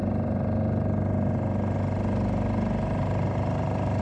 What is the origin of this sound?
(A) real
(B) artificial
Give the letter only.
A